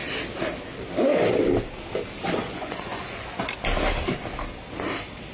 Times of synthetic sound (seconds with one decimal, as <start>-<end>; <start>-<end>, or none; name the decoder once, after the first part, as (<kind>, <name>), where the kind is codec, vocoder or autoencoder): 2.4-3.4 (vocoder, Vocos)